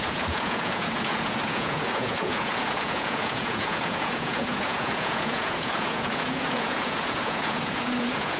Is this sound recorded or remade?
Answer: remade